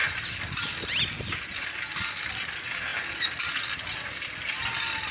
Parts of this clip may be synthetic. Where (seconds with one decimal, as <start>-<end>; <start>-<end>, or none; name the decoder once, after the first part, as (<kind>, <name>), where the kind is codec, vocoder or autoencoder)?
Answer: none